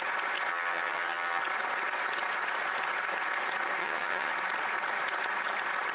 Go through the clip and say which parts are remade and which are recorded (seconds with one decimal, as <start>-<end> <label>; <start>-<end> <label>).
0.0-0.5 recorded; 0.5-1.4 remade; 1.4-3.8 recorded; 3.8-4.3 remade; 4.3-5.9 recorded